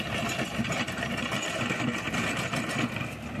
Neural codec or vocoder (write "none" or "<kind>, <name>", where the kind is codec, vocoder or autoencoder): none